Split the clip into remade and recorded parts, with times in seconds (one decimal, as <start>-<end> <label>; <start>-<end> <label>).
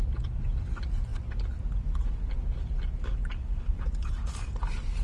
0.0-5.0 recorded